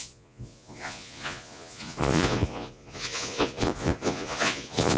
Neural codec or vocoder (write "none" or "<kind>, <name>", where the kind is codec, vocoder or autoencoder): vocoder, Vocos